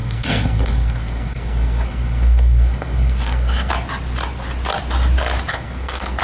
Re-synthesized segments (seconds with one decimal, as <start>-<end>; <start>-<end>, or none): 0.0-3.7; 5.5-6.2